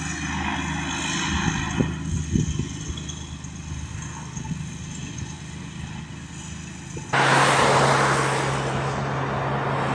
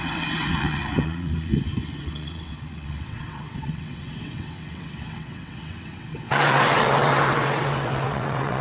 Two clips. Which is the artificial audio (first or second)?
second